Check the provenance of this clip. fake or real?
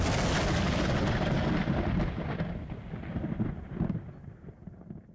real